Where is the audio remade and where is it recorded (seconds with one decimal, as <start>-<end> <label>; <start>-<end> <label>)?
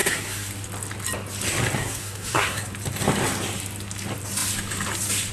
0.0-0.5 remade; 0.5-1.8 recorded; 1.8-2.7 remade; 2.7-5.3 recorded